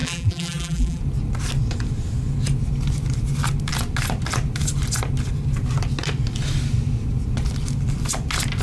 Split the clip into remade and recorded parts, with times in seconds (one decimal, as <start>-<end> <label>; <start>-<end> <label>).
0.0-1.0 remade; 1.0-8.6 recorded